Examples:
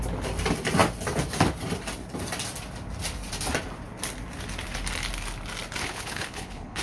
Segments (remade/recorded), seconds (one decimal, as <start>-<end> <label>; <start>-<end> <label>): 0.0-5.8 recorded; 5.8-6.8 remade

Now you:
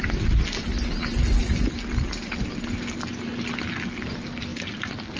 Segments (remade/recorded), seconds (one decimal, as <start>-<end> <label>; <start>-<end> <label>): 0.0-4.5 recorded; 4.5-5.2 remade

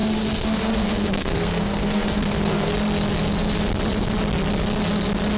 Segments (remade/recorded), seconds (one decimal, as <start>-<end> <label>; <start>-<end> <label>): 0.0-2.7 remade; 2.7-5.4 recorded

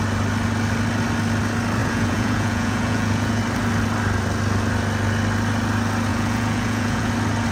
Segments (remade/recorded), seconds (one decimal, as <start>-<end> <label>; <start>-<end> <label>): 0.0-1.8 recorded; 1.8-3.4 remade; 3.4-6.1 recorded; 6.1-7.1 remade; 7.1-7.5 recorded